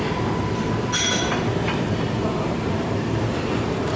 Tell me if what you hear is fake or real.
real